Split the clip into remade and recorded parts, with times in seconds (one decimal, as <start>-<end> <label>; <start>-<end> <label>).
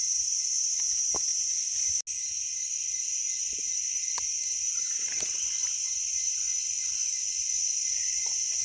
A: 0.0-8.6 recorded